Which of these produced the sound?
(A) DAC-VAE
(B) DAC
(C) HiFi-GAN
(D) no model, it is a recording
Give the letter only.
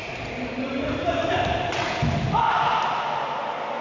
D